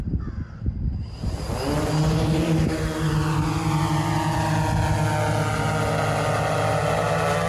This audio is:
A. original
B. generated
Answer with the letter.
A